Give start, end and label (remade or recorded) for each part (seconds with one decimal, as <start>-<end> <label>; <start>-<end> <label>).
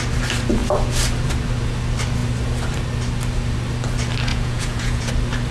0.0-4.3 recorded; 4.3-5.1 remade; 5.1-5.5 recorded